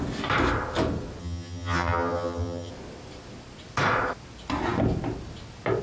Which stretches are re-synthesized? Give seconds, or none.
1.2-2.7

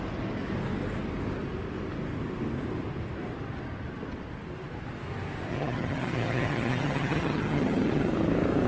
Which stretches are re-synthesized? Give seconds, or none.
5.5-8.1

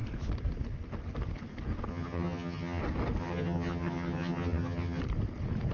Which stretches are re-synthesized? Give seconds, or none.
1.9-2.8; 3.2-5.0

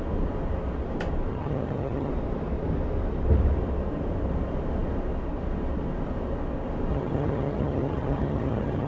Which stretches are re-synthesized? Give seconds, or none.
1.3-2.1; 6.9-8.9

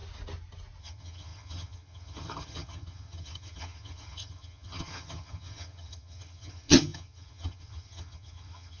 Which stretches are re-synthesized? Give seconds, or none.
0.8-8.8